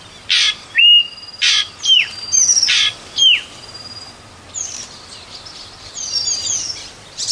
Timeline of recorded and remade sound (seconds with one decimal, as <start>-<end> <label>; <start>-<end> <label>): 0.0-7.3 recorded